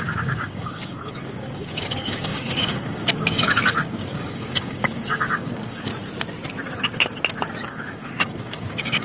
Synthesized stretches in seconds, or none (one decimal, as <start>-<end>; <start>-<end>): 0.0-5.9; 7.6-9.0